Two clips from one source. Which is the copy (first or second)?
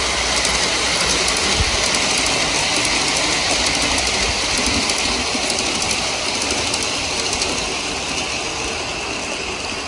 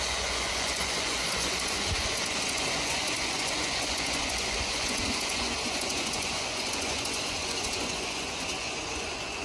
second